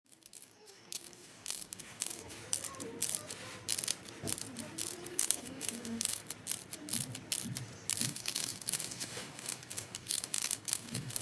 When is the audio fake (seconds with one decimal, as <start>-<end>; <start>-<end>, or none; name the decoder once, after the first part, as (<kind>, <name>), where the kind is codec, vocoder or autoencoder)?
0.0-2.4 (codec, DAC); 5.1-6.2; 8.0-11.2